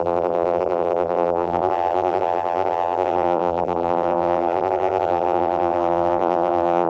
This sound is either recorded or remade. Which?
remade